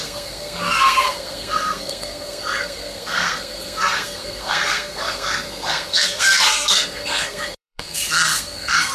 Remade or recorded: remade